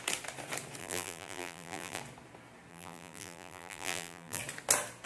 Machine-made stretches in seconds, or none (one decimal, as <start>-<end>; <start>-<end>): 0.8-2.0; 2.7-4.4